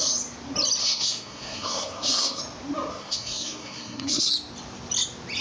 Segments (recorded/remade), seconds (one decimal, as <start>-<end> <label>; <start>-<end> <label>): 0.0-0.8 recorded; 0.8-2.4 remade; 2.4-2.9 recorded; 2.9-4.3 remade; 4.3-5.4 recorded